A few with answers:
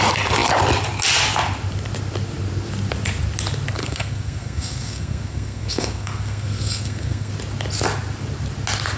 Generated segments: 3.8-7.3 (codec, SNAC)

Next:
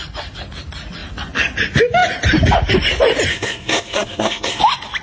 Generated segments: 3.3-4.6 (codec, SNAC)

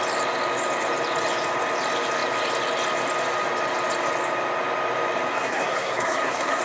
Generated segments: 5.3-6.6 (codec, SNAC)

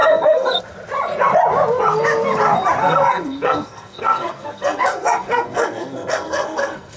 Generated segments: 0.0-0.6 (codec, SNAC); 2.8-7.0

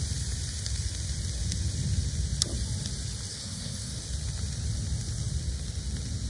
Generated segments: 3.3-4.0 (codec, SNAC)